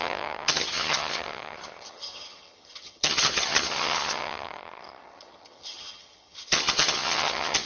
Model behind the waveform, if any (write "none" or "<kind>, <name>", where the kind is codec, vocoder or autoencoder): vocoder, HiFi-GAN